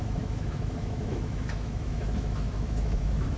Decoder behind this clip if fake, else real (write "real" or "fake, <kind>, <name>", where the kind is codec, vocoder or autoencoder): fake, autoencoder, DAC-VAE